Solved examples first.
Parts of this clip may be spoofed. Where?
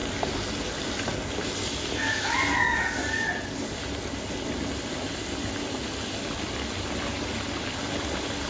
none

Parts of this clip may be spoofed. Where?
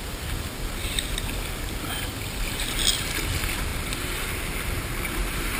none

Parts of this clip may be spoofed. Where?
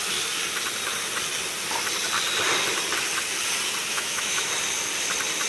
3.9-4.5 (autoencoder, DAC-VAE)